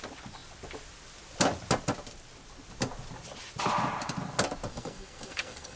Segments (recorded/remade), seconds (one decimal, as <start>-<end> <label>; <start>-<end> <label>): 0.0-4.7 recorded; 4.7-5.8 remade